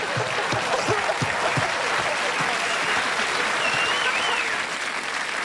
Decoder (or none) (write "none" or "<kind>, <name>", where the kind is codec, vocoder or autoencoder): none